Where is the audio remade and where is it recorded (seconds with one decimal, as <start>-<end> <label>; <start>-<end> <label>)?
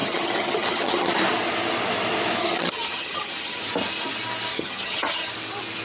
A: 0.0-1.1 remade; 1.1-2.4 recorded; 2.4-3.6 remade; 3.6-4.5 recorded; 4.5-5.3 remade; 5.3-5.8 recorded